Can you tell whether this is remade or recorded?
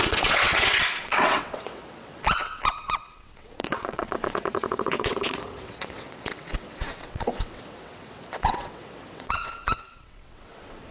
remade